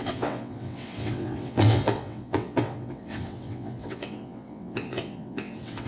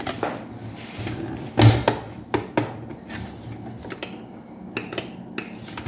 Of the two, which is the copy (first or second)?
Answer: first